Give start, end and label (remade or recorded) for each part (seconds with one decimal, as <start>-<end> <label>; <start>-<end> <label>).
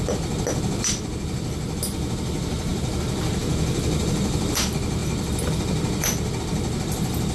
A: 0.0-7.3 recorded